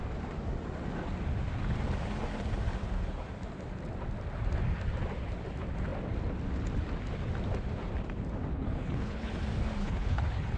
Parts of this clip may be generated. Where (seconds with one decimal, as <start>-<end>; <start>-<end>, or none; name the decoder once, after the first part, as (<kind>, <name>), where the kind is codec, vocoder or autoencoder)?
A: 8.5-9.3 (codec, HILCodec); 9.8-10.6